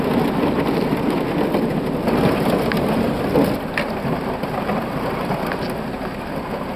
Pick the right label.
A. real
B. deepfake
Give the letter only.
A